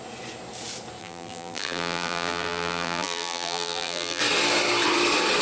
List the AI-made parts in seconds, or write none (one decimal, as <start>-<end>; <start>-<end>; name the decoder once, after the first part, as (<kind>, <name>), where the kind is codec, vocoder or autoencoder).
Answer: 1.0-4.2 (vocoder, BigVGAN v2)